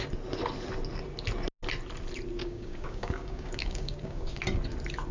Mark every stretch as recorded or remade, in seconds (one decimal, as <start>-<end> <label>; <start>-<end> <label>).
0.0-2.4 recorded; 2.4-4.4 remade; 4.4-5.1 recorded